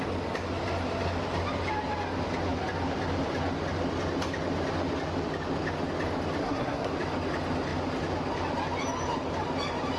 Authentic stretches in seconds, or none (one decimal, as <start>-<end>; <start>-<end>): 0.0-6.4; 6.9-10.0